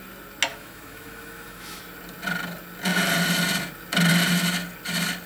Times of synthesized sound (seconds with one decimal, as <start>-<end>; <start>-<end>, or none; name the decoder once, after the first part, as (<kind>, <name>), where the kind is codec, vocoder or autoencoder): 0.5-1.8 (autoencoder, DAC-VAE)